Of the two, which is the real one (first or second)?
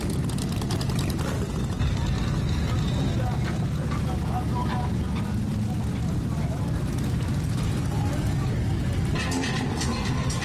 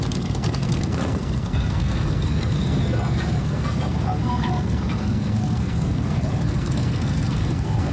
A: first